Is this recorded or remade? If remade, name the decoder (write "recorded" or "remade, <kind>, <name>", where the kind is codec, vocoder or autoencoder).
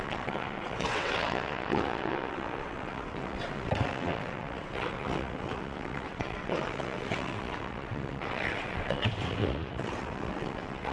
remade, vocoder, WaveNeXt